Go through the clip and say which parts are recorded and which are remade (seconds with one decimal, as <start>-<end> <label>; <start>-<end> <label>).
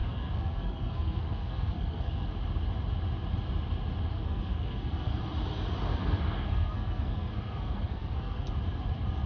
0.0-2.3 remade; 2.3-4.1 recorded; 4.1-5.2 remade; 5.2-5.9 recorded; 5.9-8.5 remade; 8.5-9.3 recorded